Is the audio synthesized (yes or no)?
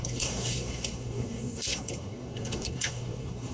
yes